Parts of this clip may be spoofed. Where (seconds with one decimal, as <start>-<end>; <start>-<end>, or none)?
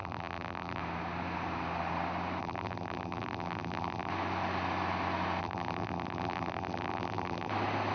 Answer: 0.0-0.8; 2.4-4.1; 5.4-7.5